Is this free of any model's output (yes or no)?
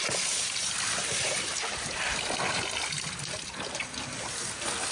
yes